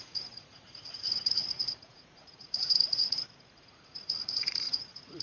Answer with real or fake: fake